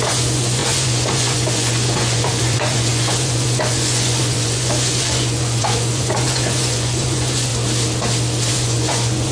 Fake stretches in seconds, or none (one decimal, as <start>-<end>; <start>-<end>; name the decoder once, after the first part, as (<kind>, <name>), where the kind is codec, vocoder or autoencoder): 0.0-7.5 (vocoder, Vocos); 8.5-9.3